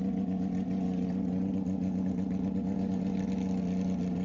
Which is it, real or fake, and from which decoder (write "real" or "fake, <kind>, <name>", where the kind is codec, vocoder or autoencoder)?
real